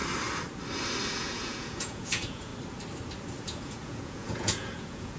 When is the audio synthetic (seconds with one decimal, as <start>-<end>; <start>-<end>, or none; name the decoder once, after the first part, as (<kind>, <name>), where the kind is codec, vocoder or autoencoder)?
1.1-2.5 (vocoder, Vocos); 3.4-5.2

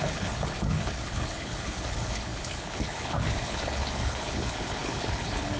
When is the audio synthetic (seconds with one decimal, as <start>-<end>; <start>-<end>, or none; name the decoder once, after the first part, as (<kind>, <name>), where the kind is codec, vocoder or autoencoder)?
0.0-5.6 (codec, HILCodec)

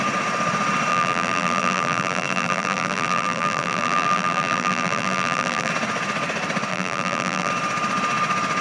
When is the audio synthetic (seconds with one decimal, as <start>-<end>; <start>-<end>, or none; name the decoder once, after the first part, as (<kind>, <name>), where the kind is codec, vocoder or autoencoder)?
0.9-5.7 (vocoder, BigVGAN v2); 6.7-7.5

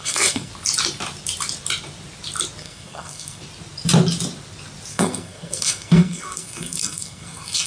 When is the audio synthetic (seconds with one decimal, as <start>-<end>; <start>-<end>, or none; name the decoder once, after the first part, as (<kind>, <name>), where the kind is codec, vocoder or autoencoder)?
0.0-0.5 (codec, SNAC); 2.6-3.4; 4.9-7.7

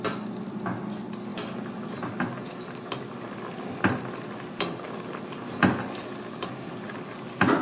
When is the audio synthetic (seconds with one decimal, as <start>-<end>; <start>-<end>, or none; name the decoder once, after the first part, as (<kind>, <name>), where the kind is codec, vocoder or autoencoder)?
none